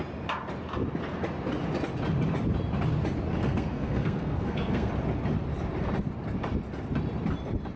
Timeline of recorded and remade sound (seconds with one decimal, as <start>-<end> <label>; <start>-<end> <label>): 0.0-3.4 recorded; 3.4-4.9 remade; 4.9-7.8 recorded